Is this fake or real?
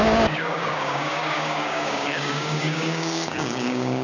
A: fake